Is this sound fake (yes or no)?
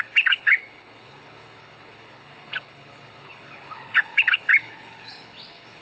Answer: yes